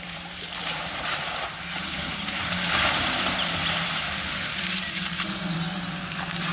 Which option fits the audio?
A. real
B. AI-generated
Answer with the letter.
B